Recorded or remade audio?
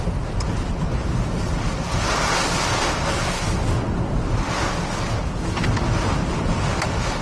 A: recorded